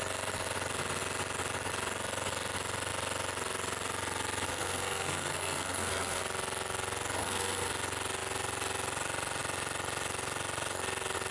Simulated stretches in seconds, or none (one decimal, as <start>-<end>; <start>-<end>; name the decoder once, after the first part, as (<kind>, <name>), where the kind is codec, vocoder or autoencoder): 4.5-6.2 (codec, SNAC); 7.2-7.7